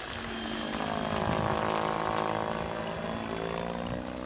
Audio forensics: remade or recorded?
recorded